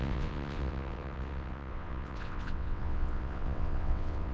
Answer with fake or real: fake